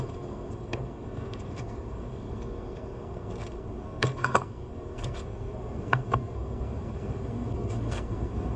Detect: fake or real fake